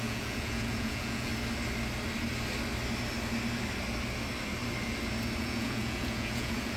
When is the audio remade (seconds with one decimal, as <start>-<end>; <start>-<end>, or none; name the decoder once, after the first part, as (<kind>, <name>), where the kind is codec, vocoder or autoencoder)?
0.0-1.3 (vocoder, Vocos); 5.4-6.8